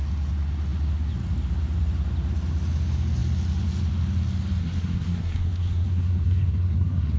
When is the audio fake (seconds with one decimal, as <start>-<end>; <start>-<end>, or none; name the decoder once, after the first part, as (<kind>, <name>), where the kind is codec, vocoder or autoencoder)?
4.6-7.2 (codec, SNAC)